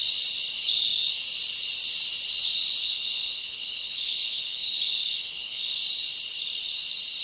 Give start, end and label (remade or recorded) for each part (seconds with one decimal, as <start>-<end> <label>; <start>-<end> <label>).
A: 0.0-2.8 recorded; 2.8-5.8 remade; 5.8-7.2 recorded